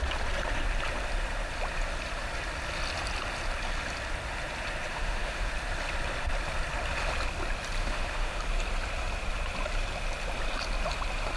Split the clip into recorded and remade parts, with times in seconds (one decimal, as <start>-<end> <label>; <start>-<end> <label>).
0.0-4.9 recorded; 4.9-5.5 remade; 5.5-7.8 recorded; 7.8-8.4 remade; 8.4-11.4 recorded

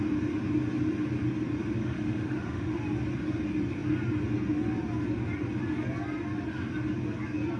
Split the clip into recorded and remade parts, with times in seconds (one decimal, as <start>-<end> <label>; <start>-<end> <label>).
0.0-1.8 recorded; 1.8-2.8 remade; 2.8-7.6 recorded

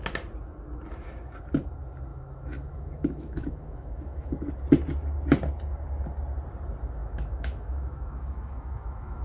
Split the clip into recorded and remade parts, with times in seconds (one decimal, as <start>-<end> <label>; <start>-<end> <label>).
0.0-2.1 recorded; 2.1-4.5 remade; 4.5-7.0 recorded; 7.0-9.2 remade

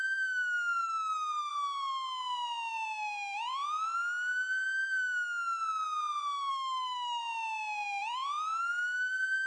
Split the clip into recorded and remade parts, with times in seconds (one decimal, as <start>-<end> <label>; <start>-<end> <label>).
0.0-1.5 remade; 1.5-6.5 recorded; 6.5-7.2 remade; 7.2-8.6 recorded; 8.6-9.5 remade